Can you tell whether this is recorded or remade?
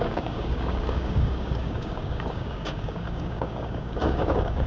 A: remade